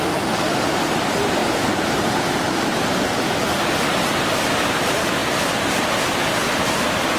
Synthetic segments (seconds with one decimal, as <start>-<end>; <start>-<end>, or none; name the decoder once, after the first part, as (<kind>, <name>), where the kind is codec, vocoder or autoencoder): 1.4-3.9 (vocoder, BigVGAN v2)